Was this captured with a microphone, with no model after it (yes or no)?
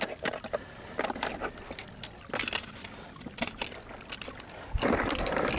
yes